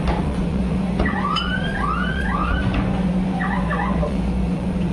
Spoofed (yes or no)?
yes